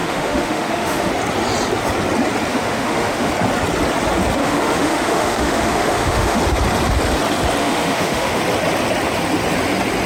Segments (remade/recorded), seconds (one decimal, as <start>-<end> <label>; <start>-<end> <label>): 0.0-1.1 remade; 1.1-2.5 recorded; 2.5-3.3 remade; 3.3-4.4 recorded; 4.4-6.4 remade; 6.4-7.6 recorded; 7.6-8.4 remade; 8.4-10.1 recorded